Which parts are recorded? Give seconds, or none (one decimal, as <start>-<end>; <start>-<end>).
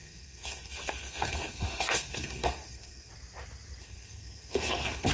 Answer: 3.1-3.8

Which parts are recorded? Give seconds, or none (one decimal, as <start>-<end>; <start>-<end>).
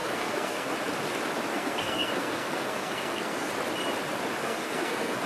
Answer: 0.7-1.5; 3.5-4.4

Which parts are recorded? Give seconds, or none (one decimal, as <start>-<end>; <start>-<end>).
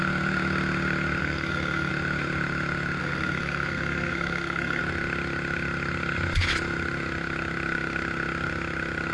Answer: 0.0-1.2; 1.9-3.0; 4.8-9.1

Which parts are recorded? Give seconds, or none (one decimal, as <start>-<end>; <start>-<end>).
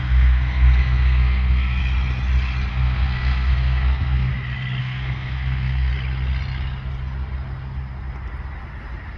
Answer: 1.8-2.7; 4.3-4.8; 5.9-9.2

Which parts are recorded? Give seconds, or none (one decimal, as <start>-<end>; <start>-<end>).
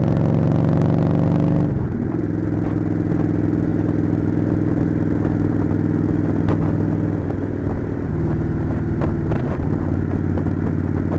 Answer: 0.0-11.2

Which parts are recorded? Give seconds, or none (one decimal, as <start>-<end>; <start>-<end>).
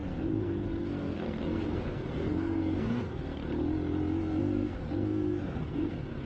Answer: 3.4-4.4